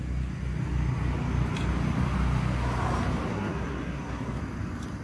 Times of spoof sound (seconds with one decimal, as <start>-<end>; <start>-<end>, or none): 3.3-4.4